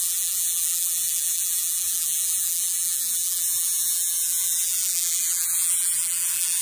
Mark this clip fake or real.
fake